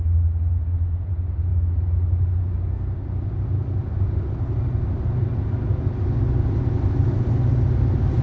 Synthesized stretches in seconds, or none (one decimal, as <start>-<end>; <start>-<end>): none